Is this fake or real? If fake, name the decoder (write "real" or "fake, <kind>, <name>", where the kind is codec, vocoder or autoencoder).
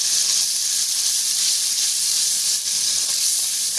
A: real